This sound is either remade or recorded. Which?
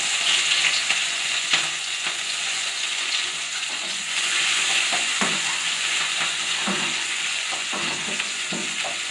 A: remade